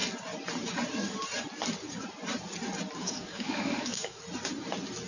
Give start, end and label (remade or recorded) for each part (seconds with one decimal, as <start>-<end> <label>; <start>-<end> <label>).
0.0-3.0 recorded; 3.0-4.2 remade; 4.2-5.1 recorded